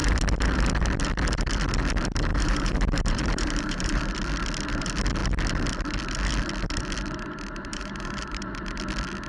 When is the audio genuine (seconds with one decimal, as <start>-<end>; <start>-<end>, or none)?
0.0-2.3; 4.0-7.7; 8.4-9.3